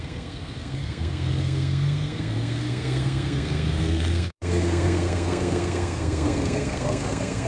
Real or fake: fake